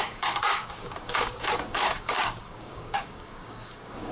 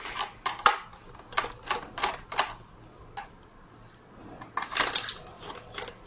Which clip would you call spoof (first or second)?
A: first